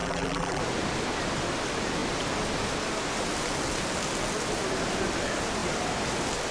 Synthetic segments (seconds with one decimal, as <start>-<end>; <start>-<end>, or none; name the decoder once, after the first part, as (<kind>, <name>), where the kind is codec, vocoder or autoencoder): 0.0-0.6 (vocoder, BigVGAN v2)